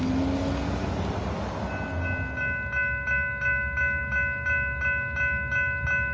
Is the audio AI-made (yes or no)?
no